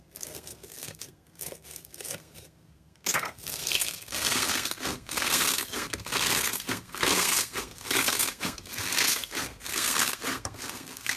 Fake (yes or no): yes